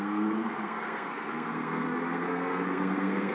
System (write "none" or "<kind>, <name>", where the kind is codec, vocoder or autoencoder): codec, SNAC